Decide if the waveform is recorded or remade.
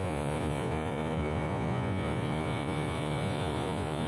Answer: remade